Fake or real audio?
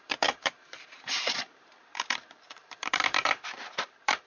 fake